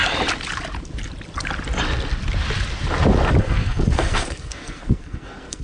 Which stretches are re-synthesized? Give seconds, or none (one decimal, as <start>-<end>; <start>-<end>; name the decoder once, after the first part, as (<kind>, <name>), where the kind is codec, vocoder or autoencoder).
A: 3.4-5.6 (codec, SNAC)